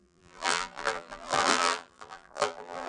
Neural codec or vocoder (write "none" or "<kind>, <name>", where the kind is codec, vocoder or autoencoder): vocoder, BigVGAN v2